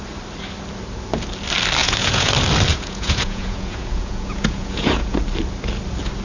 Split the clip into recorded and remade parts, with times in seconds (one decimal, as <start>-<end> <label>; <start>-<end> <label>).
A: 0.0-1.8 recorded; 1.8-2.3 remade; 2.3-2.7 recorded; 2.7-5.2 remade; 5.2-6.2 recorded

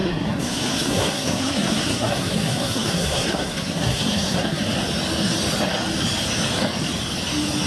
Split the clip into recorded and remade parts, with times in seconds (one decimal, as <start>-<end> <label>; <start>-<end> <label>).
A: 0.0-4.6 remade; 4.6-7.7 recorded